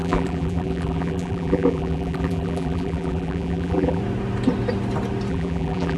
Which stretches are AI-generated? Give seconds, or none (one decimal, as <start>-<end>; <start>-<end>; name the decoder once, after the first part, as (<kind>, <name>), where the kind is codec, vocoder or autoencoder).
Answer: 0.0-4.0 (vocoder, BigVGAN v2); 5.3-6.0